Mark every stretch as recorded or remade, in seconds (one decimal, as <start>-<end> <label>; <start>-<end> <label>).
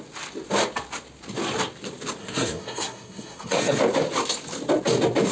0.0-2.2 recorded; 2.2-3.8 remade; 3.8-5.3 recorded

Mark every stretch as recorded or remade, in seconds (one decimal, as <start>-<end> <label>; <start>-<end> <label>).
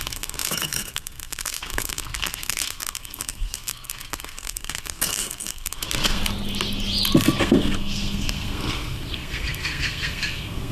0.0-6.2 remade; 6.2-7.4 recorded; 7.4-10.7 remade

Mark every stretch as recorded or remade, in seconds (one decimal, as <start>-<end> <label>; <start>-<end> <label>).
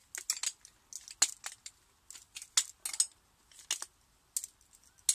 0.0-5.1 recorded